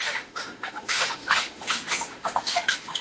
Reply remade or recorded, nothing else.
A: remade